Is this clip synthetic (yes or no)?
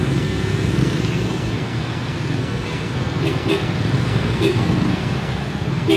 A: yes